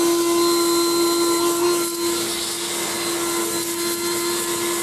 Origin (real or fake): real